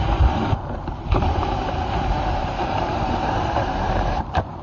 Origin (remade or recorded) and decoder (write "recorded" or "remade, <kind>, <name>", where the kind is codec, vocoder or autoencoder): remade, vocoder, BigVGAN v2